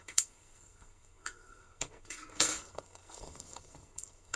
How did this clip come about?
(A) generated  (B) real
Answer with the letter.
A